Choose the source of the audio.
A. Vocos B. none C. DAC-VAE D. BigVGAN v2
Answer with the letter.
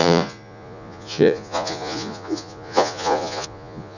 A